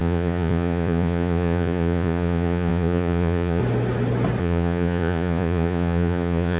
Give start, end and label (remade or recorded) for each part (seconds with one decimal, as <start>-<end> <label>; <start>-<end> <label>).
0.0-3.6 remade; 3.6-4.4 recorded; 4.4-6.6 remade